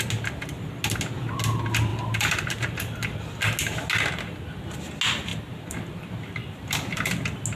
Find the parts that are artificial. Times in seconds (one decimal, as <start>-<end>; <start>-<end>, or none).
5.3-5.9; 6.4-7.1